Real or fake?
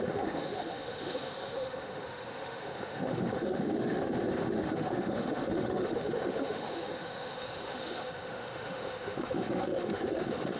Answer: fake